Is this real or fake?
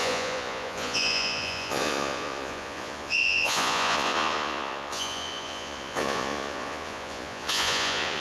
fake